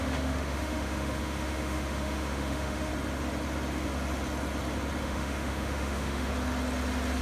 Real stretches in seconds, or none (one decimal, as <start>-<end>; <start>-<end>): 2.9-5.0; 6.3-7.2